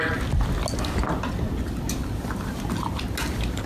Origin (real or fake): real